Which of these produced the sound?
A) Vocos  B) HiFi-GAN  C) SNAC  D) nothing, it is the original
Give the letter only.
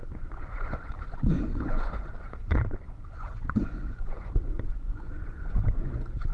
A